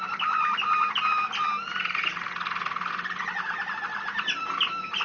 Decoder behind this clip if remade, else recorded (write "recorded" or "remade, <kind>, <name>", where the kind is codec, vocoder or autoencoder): recorded